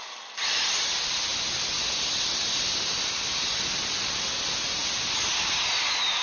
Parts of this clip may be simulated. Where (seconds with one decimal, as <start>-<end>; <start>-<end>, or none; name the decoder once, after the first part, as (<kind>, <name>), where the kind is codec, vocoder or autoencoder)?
none